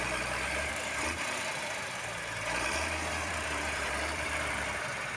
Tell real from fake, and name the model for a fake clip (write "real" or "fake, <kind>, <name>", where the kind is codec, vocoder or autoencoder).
fake, vocoder, BigVGAN v2